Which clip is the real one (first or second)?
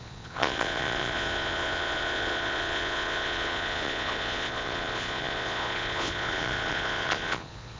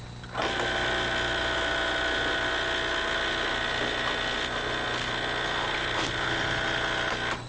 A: second